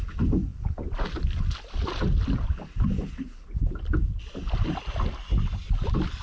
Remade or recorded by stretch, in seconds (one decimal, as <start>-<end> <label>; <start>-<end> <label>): 0.0-6.2 recorded